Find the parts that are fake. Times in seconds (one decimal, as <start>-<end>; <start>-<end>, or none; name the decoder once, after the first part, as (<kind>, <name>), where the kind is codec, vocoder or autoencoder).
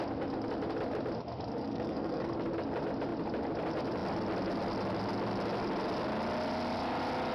1.6-2.3 (codec, SNAC)